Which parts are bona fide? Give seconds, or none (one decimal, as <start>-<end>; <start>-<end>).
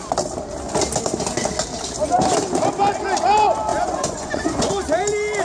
0.0-3.7; 4.7-5.4